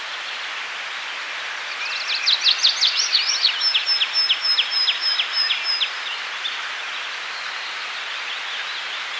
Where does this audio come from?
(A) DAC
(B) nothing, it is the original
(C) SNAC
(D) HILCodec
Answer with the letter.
B